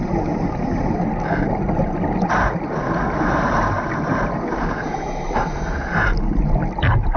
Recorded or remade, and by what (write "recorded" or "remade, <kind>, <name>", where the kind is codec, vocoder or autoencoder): recorded